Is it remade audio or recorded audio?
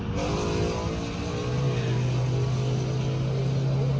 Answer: recorded